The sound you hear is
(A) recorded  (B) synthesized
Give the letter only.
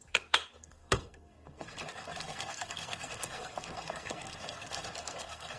B